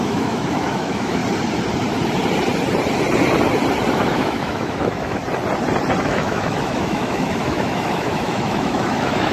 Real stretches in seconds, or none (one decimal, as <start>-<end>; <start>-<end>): 1.2-3.9; 5.2-6.0